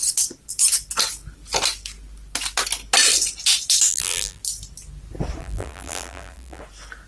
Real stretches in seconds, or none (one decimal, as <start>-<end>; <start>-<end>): 0.0-3.9; 4.4-5.4; 6.6-7.1